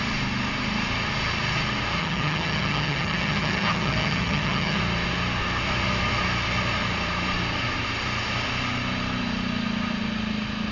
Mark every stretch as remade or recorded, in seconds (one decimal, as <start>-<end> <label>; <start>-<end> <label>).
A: 0.0-2.0 recorded; 2.0-4.8 remade; 4.8-10.7 recorded